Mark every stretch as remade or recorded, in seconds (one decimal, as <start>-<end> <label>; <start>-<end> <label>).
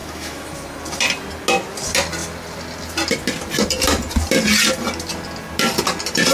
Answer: 0.0-0.5 remade; 0.5-6.3 recorded